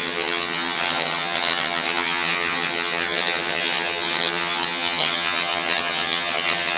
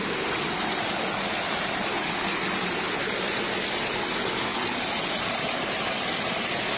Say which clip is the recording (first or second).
second